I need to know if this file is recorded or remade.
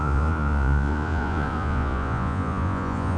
remade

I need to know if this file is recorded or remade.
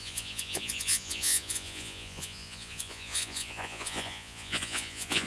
remade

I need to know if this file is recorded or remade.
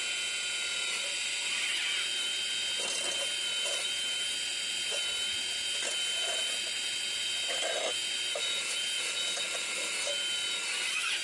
recorded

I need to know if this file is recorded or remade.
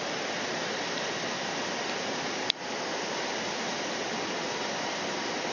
recorded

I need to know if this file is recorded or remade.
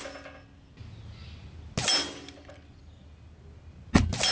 recorded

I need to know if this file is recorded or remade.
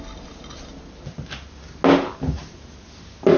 recorded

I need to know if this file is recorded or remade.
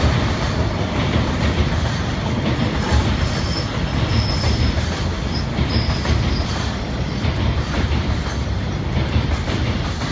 remade